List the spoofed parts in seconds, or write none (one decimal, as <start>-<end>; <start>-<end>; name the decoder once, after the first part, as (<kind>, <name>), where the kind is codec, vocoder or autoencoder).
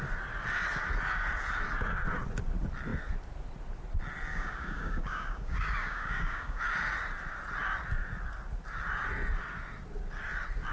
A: 4.3-6.6 (codec, DAC)